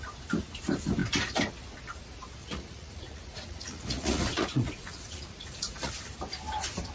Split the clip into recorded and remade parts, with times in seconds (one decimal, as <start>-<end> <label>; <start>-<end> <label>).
0.0-2.4 recorded; 2.4-5.9 remade; 5.9-6.9 recorded